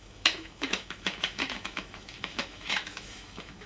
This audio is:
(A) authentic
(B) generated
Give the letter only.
B